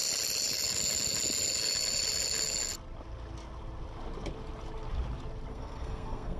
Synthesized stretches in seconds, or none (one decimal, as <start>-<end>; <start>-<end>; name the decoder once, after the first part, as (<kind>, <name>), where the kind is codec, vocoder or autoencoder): 5.5-6.4 (codec, SNAC)